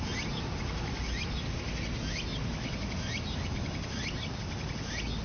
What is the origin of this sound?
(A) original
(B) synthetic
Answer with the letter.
A